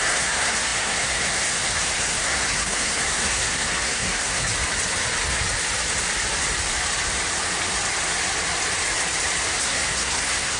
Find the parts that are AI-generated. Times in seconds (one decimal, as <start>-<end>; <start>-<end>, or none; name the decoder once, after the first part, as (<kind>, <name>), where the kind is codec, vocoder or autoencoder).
0.0-4.5 (codec, SNAC); 9.6-10.6